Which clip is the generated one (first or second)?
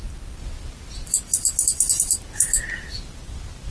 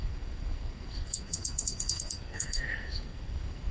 second